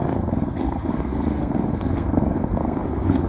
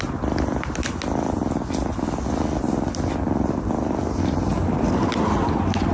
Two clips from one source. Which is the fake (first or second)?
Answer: first